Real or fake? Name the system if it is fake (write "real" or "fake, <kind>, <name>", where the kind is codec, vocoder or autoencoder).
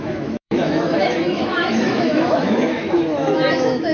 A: fake, autoencoder, DAC-VAE